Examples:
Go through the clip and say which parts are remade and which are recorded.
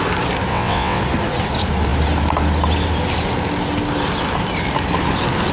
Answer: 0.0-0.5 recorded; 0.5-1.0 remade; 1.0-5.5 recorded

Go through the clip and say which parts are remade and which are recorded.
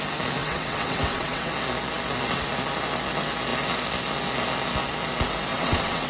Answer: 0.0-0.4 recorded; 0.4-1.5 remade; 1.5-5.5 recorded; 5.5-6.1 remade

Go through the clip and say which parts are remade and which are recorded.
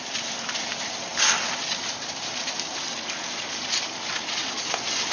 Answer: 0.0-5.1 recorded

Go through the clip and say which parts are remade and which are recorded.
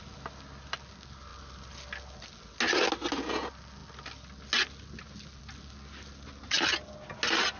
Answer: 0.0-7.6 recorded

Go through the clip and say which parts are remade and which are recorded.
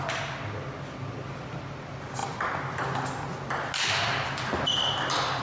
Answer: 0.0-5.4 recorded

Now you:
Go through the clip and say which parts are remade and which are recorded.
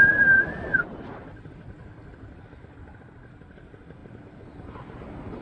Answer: 0.0-5.4 recorded